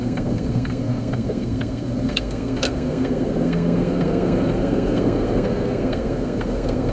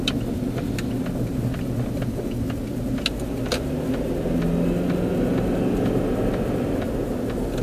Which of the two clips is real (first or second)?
second